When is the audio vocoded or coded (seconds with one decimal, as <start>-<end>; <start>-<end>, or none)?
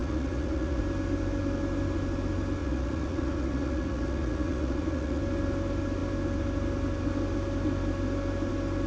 0.0-0.8; 2.6-5.2